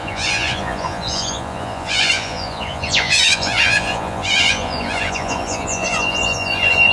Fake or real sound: fake